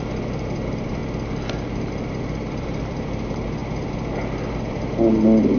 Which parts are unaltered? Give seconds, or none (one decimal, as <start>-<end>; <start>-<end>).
3.6-4.6